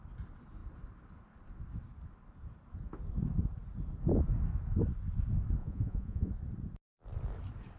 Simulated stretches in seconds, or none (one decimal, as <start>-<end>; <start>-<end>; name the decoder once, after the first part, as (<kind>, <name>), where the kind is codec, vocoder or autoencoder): 5.6-6.3 (vocoder, Vocos)